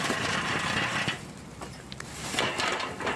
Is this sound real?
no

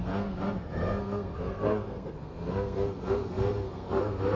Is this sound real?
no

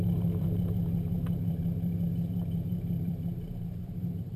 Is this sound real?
no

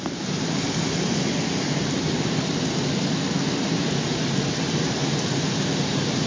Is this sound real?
yes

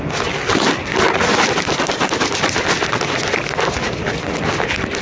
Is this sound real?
yes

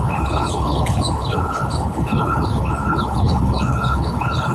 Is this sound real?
no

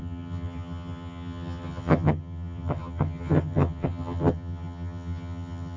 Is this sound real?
no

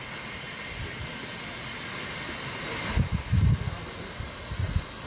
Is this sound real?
yes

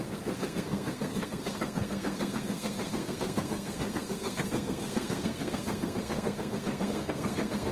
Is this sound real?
no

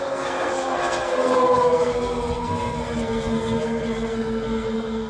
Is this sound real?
no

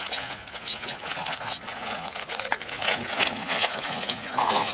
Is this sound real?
no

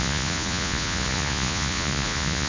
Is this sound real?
no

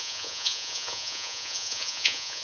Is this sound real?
no